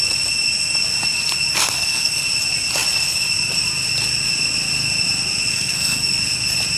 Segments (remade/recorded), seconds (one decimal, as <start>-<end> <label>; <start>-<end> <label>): 0.0-1.5 recorded; 1.5-2.2 remade; 2.2-5.5 recorded; 5.5-6.2 remade; 6.2-6.8 recorded